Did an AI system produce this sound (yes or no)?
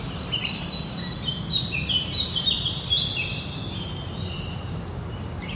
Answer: yes